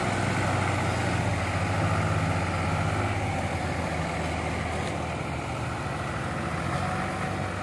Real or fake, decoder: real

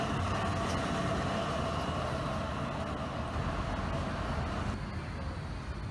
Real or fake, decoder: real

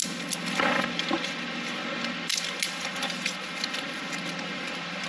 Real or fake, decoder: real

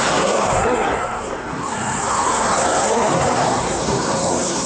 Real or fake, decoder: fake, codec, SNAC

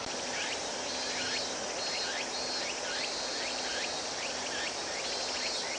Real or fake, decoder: real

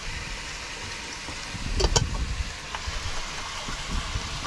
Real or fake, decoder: real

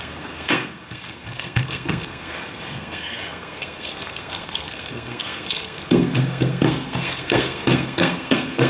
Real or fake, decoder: fake, codec, SNAC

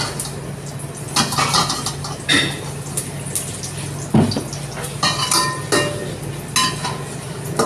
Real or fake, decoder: real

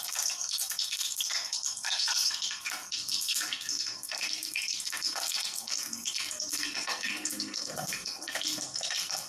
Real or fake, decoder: fake, codec, SNAC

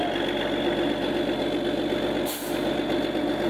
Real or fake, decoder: real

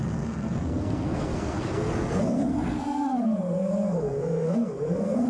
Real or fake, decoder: fake, codec, SNAC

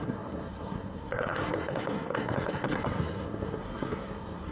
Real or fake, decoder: fake, codec, SNAC